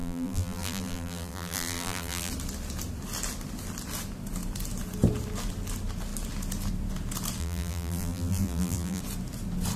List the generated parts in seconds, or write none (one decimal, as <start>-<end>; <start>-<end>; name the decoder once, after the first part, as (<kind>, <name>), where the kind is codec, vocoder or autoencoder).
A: 0.0-2.3 (vocoder, BigVGAN v2); 7.4-9.0